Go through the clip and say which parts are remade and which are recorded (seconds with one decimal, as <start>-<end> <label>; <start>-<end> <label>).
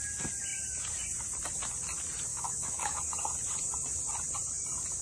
0.0-2.3 recorded; 2.3-3.0 remade; 3.0-5.0 recorded